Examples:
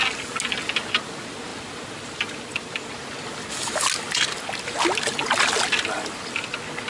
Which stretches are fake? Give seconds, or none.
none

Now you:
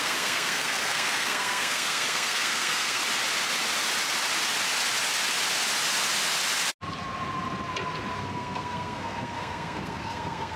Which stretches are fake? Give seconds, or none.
0.0-3.0 (codec, SNAC); 8.2-10.6

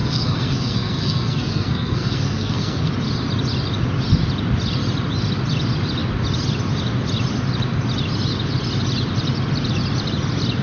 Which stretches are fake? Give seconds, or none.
0.0-2.9 (codec, SNAC)

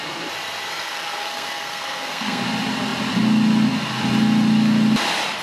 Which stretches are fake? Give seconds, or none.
0.7-2.4 (codec, SNAC)

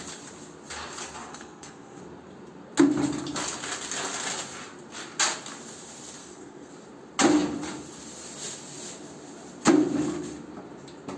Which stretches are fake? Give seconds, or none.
1.3-2.0 (codec, SNAC); 6.2-6.7

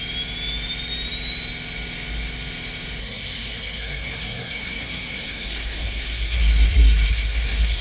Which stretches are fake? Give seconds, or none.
3.0-7.8 (codec, SNAC)